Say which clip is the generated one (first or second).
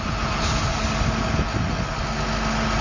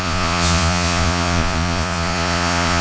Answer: second